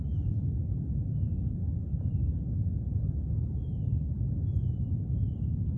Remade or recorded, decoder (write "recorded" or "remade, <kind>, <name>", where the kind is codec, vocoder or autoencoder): recorded